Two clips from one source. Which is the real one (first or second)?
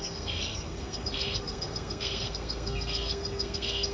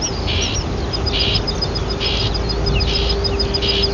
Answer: second